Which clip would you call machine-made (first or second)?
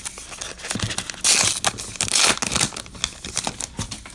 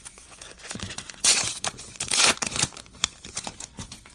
second